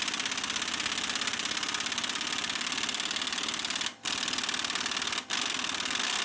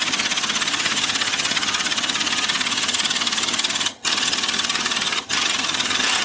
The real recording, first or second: first